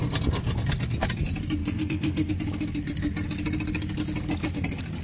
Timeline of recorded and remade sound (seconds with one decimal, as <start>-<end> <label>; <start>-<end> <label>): 0.0-1.6 recorded; 1.6-2.3 remade; 2.3-5.0 recorded